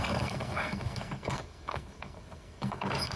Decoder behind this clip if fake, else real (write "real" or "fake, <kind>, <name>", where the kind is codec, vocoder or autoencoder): fake, codec, SNAC